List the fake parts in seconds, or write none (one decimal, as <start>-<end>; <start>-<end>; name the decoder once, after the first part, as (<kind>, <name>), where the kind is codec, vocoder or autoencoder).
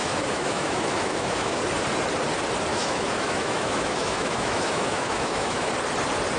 0.0-1.6 (autoencoder, DAC-VAE); 2.7-5.7